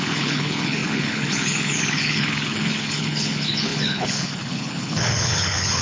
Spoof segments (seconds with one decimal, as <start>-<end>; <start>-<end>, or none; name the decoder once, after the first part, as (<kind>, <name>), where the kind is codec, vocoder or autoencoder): 0.0-5.8 (codec, HILCodec)